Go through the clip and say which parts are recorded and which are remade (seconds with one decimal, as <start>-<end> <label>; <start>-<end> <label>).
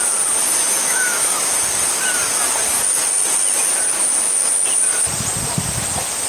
0.0-0.6 recorded; 0.6-1.5 remade; 1.5-6.3 recorded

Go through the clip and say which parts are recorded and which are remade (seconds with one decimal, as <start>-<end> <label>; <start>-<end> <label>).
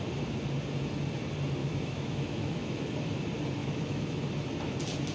0.0-1.6 recorded; 1.6-2.9 remade; 2.9-3.6 recorded; 3.6-4.2 remade; 4.2-5.1 recorded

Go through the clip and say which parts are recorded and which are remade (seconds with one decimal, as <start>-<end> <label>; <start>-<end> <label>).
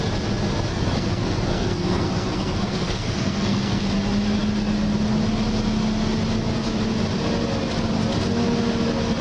0.0-0.7 recorded; 0.7-3.8 remade; 3.8-9.2 recorded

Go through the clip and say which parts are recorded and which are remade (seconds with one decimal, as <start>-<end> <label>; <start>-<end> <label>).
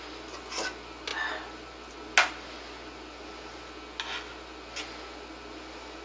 0.0-6.0 recorded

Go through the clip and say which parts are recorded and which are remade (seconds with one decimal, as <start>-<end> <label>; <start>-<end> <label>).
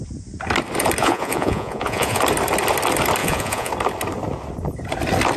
0.0-1.0 recorded; 1.0-2.2 remade; 2.2-3.2 recorded; 3.2-3.7 remade; 3.7-5.4 recorded